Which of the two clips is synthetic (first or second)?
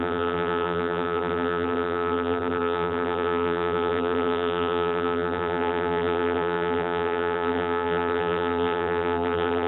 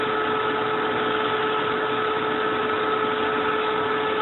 first